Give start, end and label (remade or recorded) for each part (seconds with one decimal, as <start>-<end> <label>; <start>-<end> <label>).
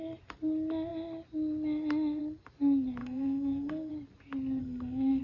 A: 0.0-3.0 recorded; 3.0-3.9 remade; 3.9-4.6 recorded; 4.6-5.2 remade